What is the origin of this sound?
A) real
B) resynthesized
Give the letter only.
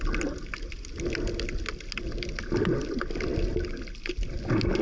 A